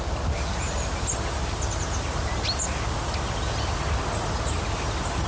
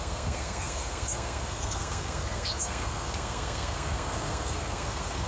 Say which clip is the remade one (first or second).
second